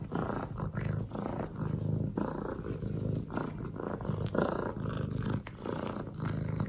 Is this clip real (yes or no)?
yes